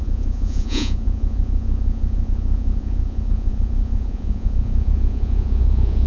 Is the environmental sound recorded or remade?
remade